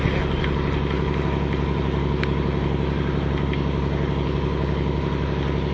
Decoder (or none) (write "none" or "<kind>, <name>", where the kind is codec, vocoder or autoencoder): none